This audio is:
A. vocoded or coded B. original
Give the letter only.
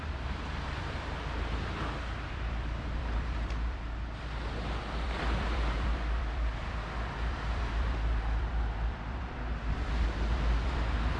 A